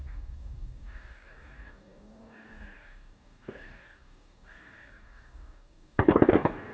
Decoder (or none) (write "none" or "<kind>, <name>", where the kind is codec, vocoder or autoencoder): codec, DAC